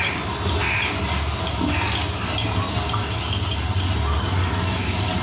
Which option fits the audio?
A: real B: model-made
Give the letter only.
A